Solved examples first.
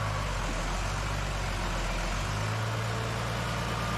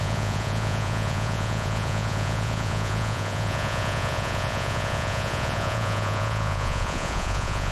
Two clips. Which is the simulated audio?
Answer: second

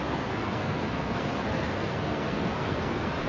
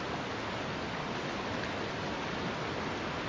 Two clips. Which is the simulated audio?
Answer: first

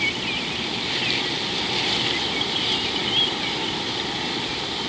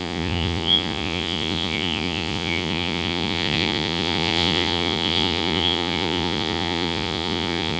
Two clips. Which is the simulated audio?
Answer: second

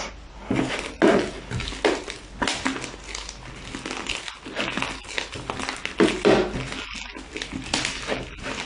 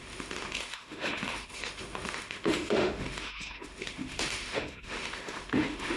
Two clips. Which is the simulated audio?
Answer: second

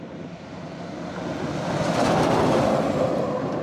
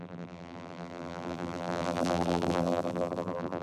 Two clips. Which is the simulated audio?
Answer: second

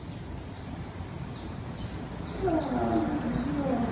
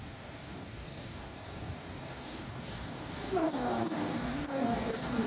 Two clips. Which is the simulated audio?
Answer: second